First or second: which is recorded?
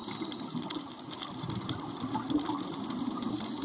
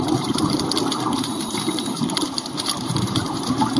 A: first